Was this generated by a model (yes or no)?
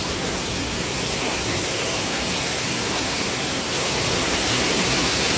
yes